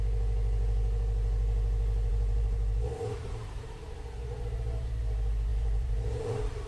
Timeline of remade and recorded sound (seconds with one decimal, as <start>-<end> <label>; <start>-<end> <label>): 0.0-2.1 recorded; 2.1-5.0 remade; 5.0-5.5 recorded; 5.5-6.3 remade; 6.3-6.7 recorded